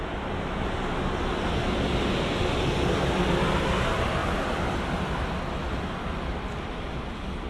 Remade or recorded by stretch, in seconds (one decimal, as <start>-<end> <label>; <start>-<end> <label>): 0.0-4.2 recorded; 4.2-7.1 remade; 7.1-7.5 recorded